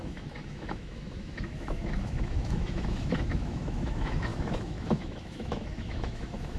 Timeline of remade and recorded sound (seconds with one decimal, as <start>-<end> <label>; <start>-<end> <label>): 0.0-6.6 remade